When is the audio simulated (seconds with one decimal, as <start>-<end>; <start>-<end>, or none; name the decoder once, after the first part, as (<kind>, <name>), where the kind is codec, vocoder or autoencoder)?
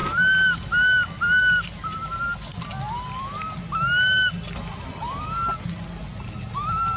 none